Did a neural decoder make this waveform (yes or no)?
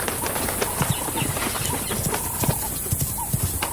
no